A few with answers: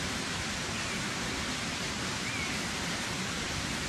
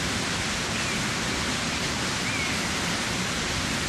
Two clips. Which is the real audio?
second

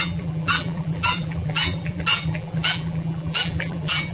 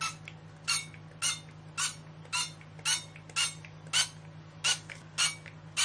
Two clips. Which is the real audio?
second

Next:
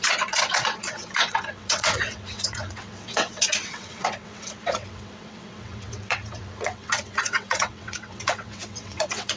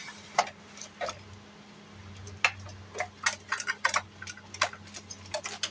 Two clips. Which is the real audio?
second